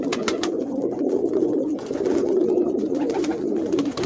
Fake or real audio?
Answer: fake